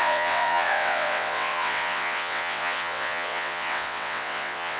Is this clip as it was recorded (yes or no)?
no